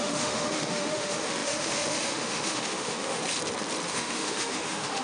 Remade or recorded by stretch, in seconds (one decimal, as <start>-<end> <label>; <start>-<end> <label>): 0.0-3.2 remade; 3.2-3.9 recorded; 3.9-5.0 remade